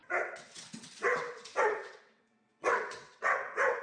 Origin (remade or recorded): remade